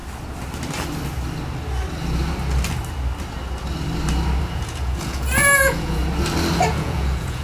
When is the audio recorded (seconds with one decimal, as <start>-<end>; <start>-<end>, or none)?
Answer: 0.0-4.4; 6.0-6.7